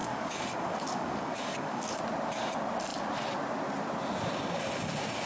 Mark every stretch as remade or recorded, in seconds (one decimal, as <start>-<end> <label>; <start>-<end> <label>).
0.0-2.0 remade; 2.0-5.3 recorded